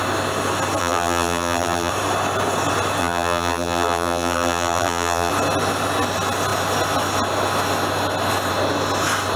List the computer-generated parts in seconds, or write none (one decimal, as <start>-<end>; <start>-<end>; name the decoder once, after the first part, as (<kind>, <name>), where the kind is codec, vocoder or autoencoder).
0.8-1.9 (vocoder, BigVGAN v2); 3.0-5.3